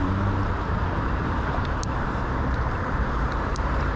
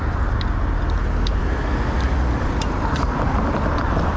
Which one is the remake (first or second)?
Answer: first